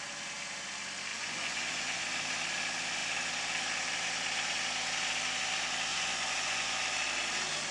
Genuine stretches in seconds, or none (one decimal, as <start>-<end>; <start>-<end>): 0.0-1.1; 2.0-5.9; 6.8-7.7